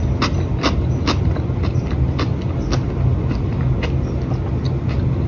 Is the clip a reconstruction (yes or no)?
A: no